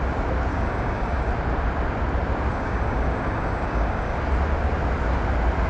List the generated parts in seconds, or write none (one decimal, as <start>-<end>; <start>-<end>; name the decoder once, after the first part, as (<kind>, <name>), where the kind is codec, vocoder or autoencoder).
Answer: 0.5-1.3 (codec, DAC); 2.5-4.2